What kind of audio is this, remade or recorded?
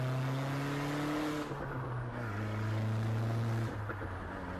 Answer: recorded